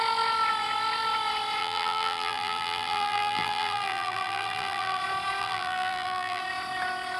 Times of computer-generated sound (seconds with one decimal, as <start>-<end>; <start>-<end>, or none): 1.6-5.0; 5.4-6.4